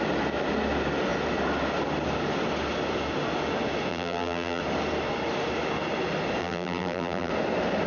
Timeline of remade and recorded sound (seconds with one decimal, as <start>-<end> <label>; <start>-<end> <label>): 0.0-3.9 recorded; 3.9-4.6 remade; 4.6-6.4 recorded; 6.4-7.3 remade; 7.3-7.9 recorded